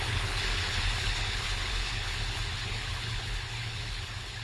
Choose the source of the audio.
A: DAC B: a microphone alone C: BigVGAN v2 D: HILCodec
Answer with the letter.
D